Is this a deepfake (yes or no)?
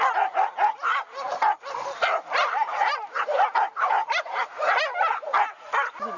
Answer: no